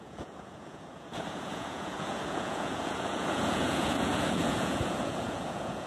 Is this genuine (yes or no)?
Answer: no